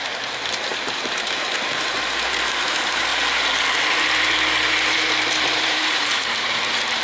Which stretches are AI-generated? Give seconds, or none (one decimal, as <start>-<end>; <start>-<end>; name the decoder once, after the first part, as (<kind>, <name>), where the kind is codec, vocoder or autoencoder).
0.0-3.1 (vocoder, BigVGAN v2); 4.9-7.0